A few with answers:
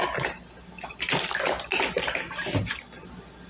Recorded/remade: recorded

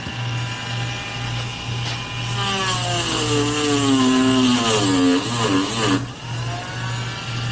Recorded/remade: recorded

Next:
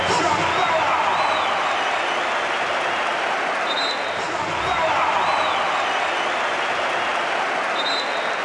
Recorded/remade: recorded